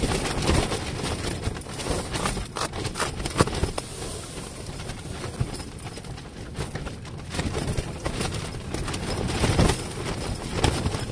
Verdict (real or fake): real